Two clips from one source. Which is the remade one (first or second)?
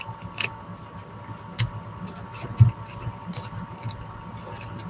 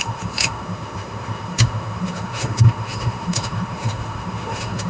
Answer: second